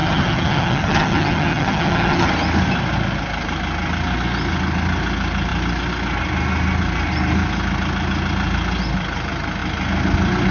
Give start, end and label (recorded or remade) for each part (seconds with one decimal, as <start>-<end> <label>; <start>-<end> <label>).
0.0-2.3 remade; 2.3-10.5 recorded